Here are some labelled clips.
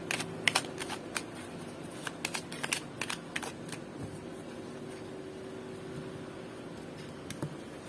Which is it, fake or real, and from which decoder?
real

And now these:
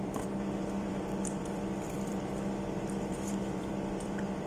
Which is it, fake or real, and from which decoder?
fake, vocoder, BigVGAN v2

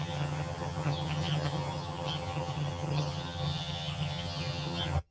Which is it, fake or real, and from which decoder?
fake, vocoder, HiFi-GAN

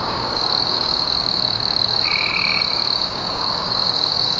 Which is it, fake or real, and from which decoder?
fake, codec, DAC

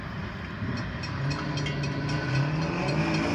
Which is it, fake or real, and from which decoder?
real